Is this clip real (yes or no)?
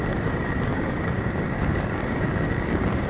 no